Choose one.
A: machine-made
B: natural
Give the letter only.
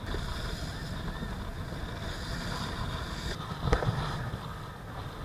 B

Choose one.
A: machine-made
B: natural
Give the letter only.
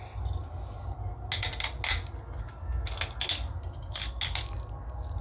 B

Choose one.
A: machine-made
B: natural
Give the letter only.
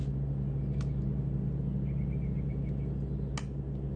B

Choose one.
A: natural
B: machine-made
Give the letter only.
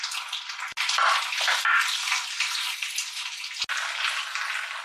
A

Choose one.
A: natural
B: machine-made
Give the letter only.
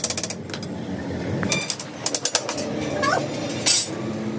A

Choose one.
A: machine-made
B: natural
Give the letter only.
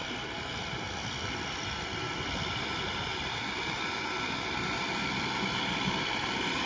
B